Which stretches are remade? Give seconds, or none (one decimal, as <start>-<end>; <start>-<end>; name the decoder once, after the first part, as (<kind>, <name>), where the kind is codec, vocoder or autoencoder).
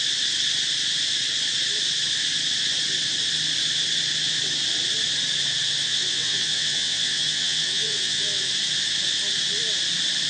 5.9-8.5 (vocoder, WaveNeXt)